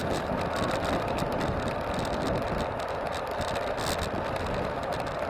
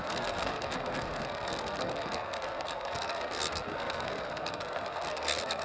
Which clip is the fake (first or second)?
second